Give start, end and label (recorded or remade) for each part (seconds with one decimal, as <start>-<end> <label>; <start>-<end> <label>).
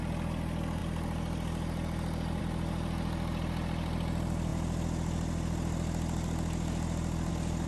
0.0-7.7 recorded